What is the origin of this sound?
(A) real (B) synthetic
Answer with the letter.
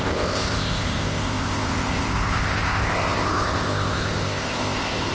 B